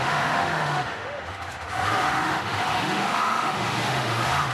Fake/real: fake